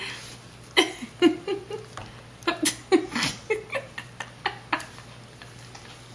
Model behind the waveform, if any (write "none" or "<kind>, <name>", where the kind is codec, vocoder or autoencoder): none